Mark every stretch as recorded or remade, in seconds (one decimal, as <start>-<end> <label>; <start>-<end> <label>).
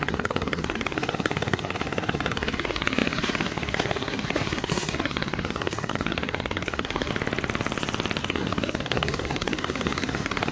0.0-7.1 remade; 7.1-8.2 recorded; 8.2-10.5 remade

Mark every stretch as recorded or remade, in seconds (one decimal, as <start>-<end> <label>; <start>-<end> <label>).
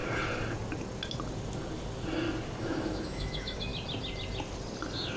0.0-2.6 recorded; 2.6-3.7 remade; 3.7-5.2 recorded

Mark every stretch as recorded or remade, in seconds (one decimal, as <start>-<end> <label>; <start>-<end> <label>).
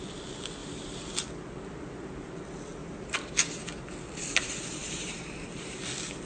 0.0-0.6 recorded; 0.6-1.2 remade; 1.2-2.8 recorded; 2.8-3.3 remade; 3.3-4.8 recorded; 4.8-5.8 remade; 5.8-6.3 recorded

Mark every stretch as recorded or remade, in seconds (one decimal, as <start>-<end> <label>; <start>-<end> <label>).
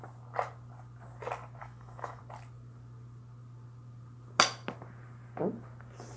0.0-1.6 recorded; 1.6-2.2 remade; 2.2-6.2 recorded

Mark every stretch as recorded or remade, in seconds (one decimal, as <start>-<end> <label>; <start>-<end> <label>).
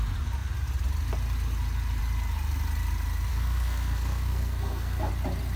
0.0-3.3 recorded; 3.3-5.1 remade; 5.1-5.6 recorded